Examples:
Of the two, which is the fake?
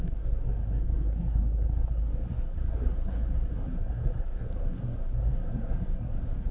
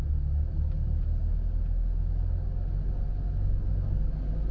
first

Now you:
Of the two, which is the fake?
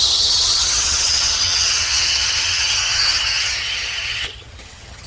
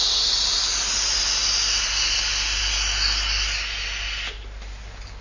first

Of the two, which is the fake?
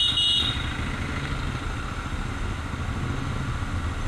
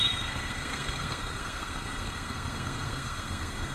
second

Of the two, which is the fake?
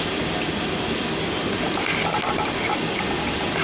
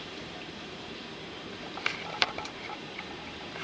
second